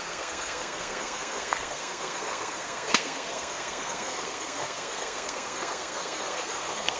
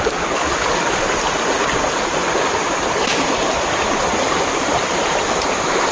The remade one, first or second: first